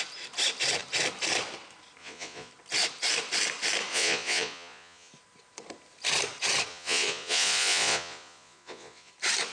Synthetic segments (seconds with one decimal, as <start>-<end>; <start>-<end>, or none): 2.0-2.5; 3.9-5.1; 6.7-9.1